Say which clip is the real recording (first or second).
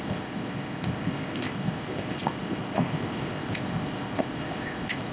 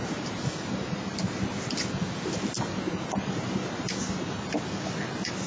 second